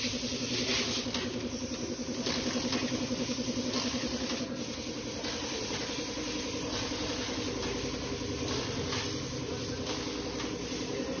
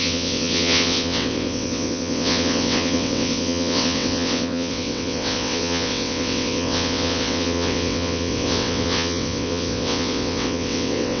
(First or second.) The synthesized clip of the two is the second